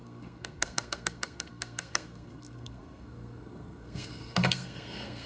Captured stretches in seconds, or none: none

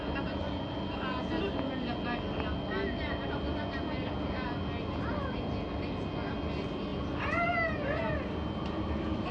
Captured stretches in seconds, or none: 0.0-9.3

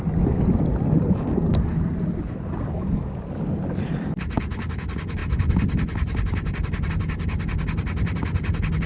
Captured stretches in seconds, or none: 0.0-8.9

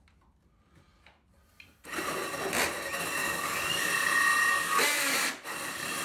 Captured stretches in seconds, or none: 0.0-3.2; 3.9-4.5; 5.3-6.0

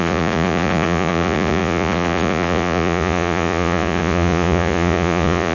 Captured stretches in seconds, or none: none